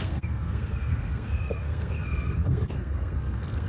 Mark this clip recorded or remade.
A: remade